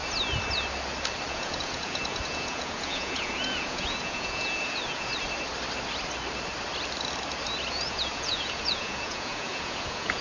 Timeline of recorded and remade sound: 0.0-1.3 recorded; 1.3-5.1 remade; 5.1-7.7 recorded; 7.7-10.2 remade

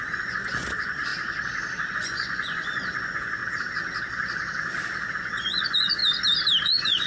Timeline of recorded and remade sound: 0.0-1.1 remade; 1.1-1.9 recorded; 1.9-3.4 remade; 3.4-5.2 recorded; 5.2-6.0 remade; 6.0-6.6 recorded; 6.6-7.1 remade